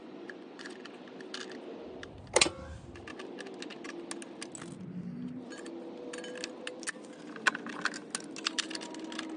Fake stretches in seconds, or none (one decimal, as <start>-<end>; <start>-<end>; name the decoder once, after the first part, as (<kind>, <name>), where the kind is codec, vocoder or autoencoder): 0.0-1.0 (vocoder, Vocos)